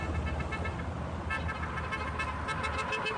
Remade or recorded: recorded